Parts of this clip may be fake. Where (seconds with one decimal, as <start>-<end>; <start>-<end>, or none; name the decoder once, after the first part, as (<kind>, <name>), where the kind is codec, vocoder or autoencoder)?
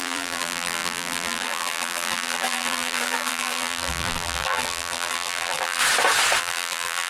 0.0-5.8 (vocoder, BigVGAN v2); 6.4-7.1